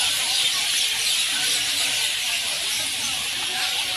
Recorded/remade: recorded